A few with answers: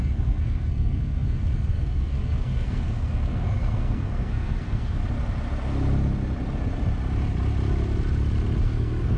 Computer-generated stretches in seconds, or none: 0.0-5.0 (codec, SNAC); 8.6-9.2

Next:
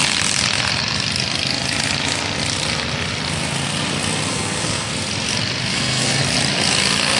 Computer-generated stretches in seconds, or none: 4.3-4.9 (codec, SNAC); 5.7-6.2

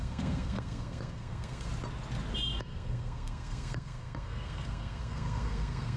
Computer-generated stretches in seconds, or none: 0.0-1.7 (codec, SNAC); 2.6-6.0

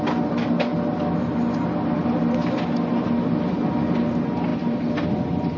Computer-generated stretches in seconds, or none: none

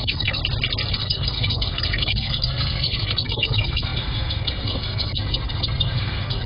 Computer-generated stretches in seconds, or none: 0.0-0.4 (codec, SNAC); 0.9-6.5